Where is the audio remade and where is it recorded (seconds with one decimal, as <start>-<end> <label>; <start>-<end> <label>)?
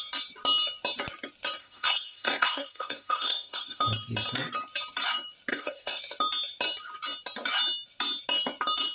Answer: 0.0-1.6 recorded; 1.6-3.8 remade; 3.8-5.5 recorded; 5.5-6.0 remade; 6.0-8.9 recorded